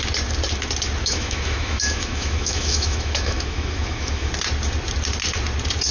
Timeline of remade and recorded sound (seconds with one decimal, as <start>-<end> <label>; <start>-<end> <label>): 0.0-1.0 recorded; 1.0-4.3 remade; 4.3-5.9 recorded